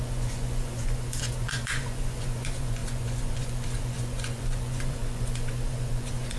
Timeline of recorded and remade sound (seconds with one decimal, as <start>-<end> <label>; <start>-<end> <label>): 0.0-6.4 remade